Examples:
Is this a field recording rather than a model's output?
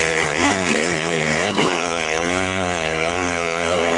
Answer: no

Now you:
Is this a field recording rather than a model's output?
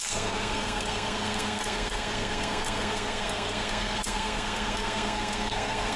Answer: no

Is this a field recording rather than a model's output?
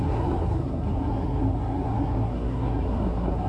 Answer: no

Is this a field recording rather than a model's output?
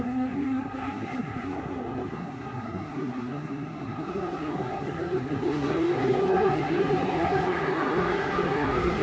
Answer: no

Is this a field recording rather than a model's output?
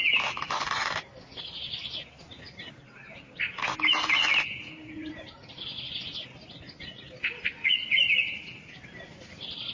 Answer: yes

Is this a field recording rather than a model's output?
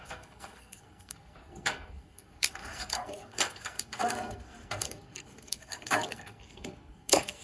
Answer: no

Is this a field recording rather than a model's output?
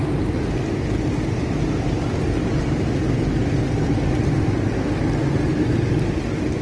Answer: yes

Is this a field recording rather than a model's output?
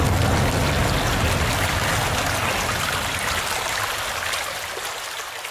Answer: yes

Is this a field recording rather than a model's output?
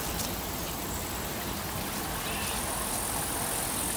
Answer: yes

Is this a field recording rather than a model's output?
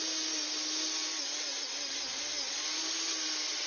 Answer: yes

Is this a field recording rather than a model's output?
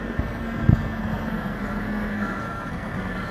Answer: no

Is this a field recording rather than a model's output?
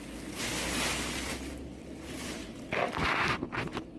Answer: yes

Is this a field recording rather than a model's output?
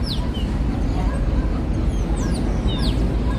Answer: yes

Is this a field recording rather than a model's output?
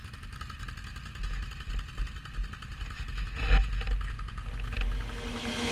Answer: yes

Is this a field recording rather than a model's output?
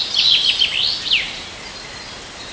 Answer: yes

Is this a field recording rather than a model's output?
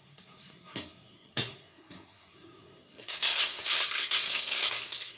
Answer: no